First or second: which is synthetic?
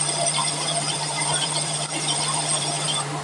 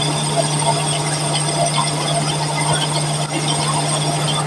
first